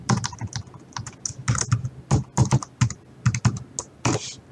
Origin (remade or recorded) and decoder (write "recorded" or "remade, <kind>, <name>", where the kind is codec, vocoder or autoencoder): recorded